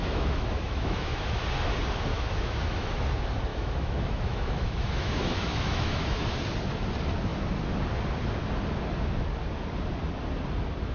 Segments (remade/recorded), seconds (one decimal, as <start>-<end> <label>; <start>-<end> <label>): 0.0-1.4 remade; 1.4-2.1 recorded; 2.1-2.9 remade; 2.9-3.5 recorded; 3.5-6.2 remade; 6.2-10.9 recorded